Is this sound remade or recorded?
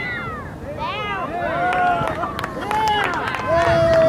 recorded